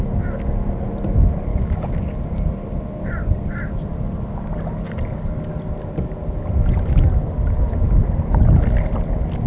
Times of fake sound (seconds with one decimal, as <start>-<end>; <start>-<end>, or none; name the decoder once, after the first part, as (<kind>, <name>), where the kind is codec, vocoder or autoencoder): 1.5-2.5 (codec, DAC)